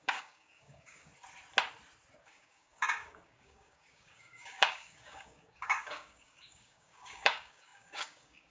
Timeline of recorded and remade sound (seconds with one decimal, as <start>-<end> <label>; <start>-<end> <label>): 0.0-1.1 remade; 1.1-2.2 recorded; 2.2-8.5 remade